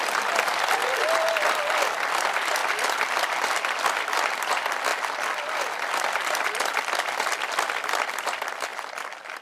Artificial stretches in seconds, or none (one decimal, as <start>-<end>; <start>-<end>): 2.6-4.0